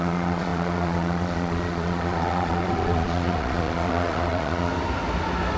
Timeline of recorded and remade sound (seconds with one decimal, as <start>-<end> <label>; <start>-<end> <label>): 0.0-4.7 remade; 4.7-5.6 recorded